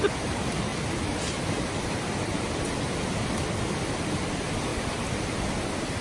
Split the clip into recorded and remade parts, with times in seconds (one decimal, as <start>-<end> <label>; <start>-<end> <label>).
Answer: 0.0-4.7 remade; 4.7-5.3 recorded; 5.3-6.0 remade